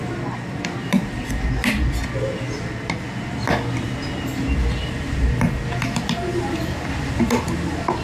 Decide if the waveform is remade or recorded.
recorded